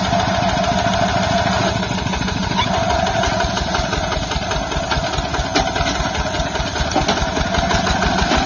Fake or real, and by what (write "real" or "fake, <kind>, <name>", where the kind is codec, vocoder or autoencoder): real